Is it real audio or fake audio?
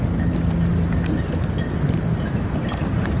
real